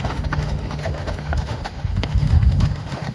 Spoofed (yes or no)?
yes